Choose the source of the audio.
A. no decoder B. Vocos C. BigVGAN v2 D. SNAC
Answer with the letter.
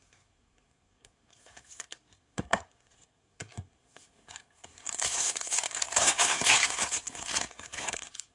D